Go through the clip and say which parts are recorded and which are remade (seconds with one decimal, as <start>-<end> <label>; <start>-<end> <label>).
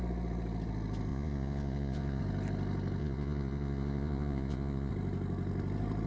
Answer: 0.0-1.1 recorded; 1.1-2.2 remade; 2.2-3.0 recorded; 3.0-4.9 remade; 4.9-6.1 recorded